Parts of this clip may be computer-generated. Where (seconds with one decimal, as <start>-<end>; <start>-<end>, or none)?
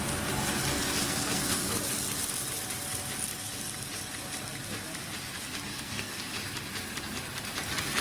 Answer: 1.0-1.8; 5.7-6.2